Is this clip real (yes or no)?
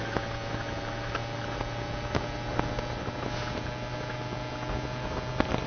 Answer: yes